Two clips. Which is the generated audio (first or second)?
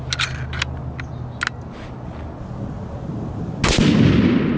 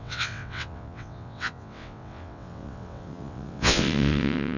second